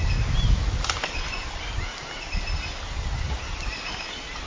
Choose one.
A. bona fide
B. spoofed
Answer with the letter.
A